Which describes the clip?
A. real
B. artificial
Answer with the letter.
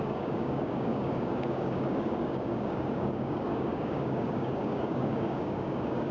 B